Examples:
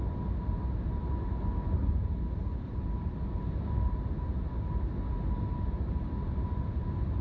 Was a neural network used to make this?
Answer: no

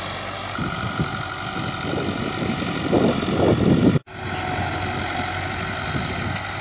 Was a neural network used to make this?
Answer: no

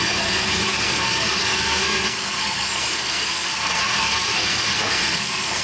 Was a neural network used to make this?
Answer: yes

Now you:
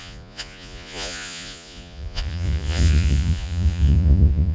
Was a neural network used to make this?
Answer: yes